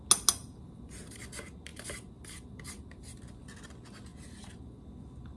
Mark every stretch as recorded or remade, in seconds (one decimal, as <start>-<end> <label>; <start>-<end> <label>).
0.0-0.4 recorded; 0.4-1.2 remade; 1.2-1.7 recorded; 1.7-3.2 remade; 3.2-4.1 recorded; 4.1-4.8 remade; 4.8-5.4 recorded